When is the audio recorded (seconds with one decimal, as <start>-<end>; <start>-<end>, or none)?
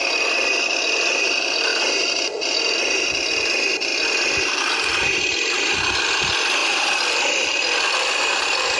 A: 1.7-2.4